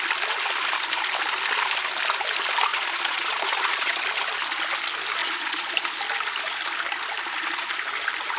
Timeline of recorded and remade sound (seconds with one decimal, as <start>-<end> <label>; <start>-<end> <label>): 0.0-2.7 recorded; 2.7-4.0 remade; 4.0-5.2 recorded; 5.2-5.7 remade; 5.7-8.4 recorded